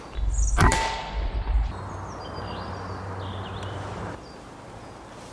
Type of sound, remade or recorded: recorded